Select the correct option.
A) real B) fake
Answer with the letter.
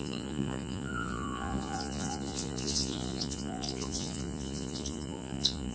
B